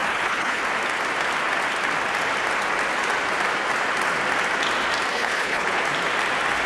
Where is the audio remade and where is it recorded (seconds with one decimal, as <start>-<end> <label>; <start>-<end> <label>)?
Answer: 0.0-0.6 remade; 0.6-5.1 recorded; 5.1-5.8 remade; 5.8-6.7 recorded